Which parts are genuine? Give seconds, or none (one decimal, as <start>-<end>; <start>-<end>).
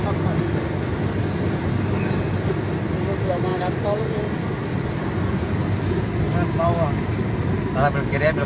0.0-8.5